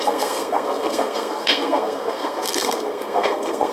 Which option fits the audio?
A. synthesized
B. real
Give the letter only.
A